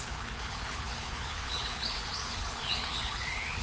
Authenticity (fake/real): fake